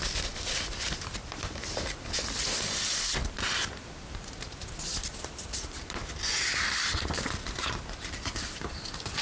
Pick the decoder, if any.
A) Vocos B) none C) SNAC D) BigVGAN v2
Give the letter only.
D